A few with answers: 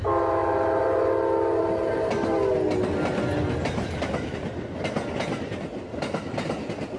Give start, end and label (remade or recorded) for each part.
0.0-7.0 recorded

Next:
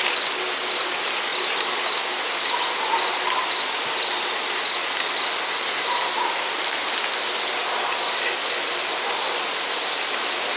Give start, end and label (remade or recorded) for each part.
0.0-10.6 recorded